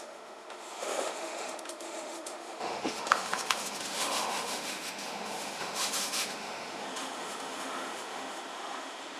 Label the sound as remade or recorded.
remade